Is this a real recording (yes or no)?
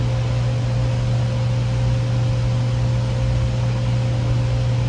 yes